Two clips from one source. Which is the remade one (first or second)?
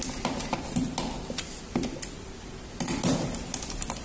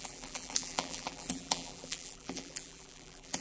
second